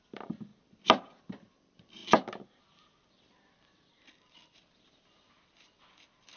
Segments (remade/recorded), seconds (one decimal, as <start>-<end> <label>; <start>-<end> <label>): 0.0-0.5 remade; 0.5-1.2 recorded; 1.2-2.0 remade; 2.0-2.6 recorded; 2.6-6.4 remade